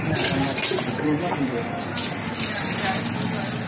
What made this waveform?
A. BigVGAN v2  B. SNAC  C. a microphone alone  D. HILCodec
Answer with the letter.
C